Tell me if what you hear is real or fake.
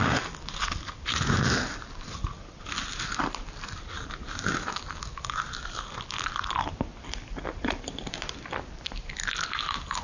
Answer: real